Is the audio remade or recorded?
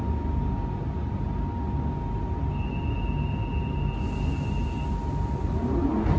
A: recorded